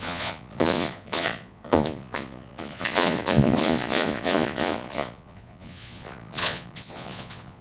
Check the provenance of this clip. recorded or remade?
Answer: remade